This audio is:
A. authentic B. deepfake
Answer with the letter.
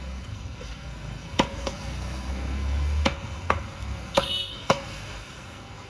B